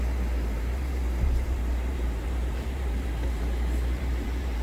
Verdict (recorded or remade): remade